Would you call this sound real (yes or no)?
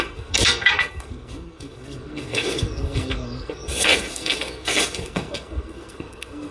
no